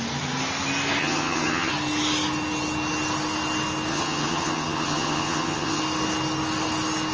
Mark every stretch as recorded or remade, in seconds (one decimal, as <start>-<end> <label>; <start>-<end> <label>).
0.0-1.0 recorded; 1.0-1.7 remade; 1.7-3.9 recorded; 3.9-5.8 remade; 5.8-7.1 recorded

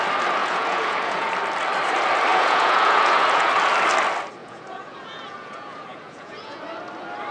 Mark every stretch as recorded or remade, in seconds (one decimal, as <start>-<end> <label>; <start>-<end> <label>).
0.0-0.4 recorded; 0.4-1.3 remade; 1.3-2.3 recorded; 2.3-3.5 remade; 3.5-4.4 recorded; 4.4-6.6 remade; 6.6-7.3 recorded

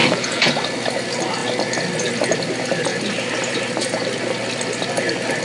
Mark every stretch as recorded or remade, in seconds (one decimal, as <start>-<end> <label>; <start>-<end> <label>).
0.0-0.5 remade; 0.5-5.4 recorded

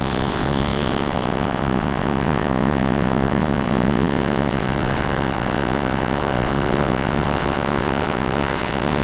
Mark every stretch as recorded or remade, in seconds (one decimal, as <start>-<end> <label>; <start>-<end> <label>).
0.0-9.0 remade

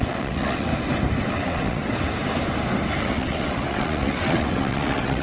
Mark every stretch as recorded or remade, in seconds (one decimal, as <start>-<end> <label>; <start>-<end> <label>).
0.0-0.7 remade; 0.7-1.3 recorded; 1.3-1.8 remade; 1.8-3.0 recorded; 3.0-5.2 remade

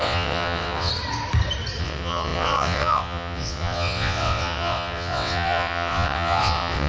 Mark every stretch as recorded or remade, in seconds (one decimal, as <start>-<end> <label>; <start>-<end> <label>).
0.0-0.9 remade; 0.9-1.8 recorded; 1.8-6.9 remade

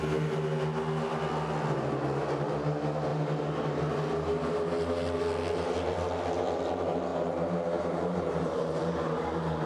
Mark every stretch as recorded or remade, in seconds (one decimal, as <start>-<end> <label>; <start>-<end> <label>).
0.0-7.1 recorded; 7.1-9.7 remade

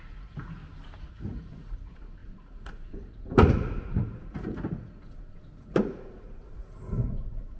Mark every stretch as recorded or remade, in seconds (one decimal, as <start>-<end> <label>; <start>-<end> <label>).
0.0-0.6 remade; 0.6-1.1 recorded; 1.1-7.6 remade